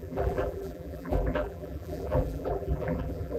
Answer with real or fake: fake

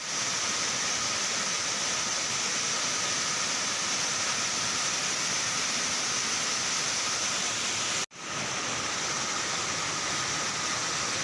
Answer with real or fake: real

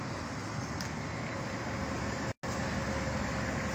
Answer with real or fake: real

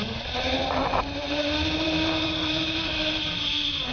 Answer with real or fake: fake